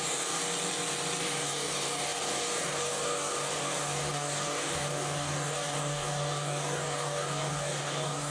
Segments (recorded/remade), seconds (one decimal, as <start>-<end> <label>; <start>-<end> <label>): 0.0-0.4 remade; 0.4-1.2 recorded; 1.2-8.3 remade